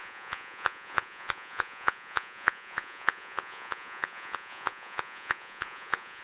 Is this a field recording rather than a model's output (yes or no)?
no